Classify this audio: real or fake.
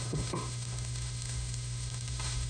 fake